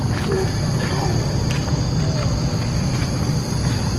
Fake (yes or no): no